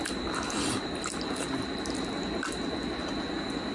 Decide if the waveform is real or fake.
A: real